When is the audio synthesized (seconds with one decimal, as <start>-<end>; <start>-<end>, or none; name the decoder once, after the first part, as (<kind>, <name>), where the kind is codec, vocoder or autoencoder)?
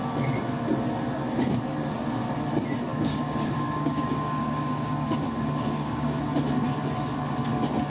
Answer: 2.9-6.2 (codec, DAC)